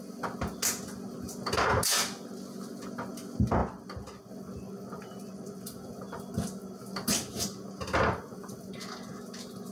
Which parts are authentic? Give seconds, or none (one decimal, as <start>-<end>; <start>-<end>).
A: 0.0-9.7